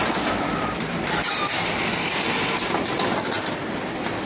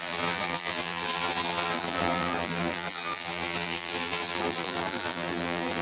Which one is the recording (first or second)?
first